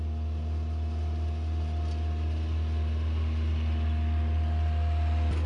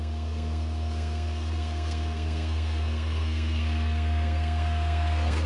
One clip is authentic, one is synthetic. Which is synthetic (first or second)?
second